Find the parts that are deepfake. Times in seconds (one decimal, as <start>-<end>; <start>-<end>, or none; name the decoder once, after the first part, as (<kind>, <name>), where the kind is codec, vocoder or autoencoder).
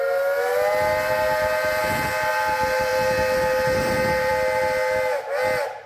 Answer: none